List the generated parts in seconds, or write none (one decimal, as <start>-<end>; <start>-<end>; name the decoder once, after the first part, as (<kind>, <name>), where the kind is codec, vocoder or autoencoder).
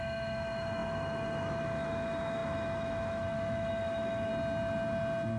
0.0-4.3 (autoencoder, DAC-VAE)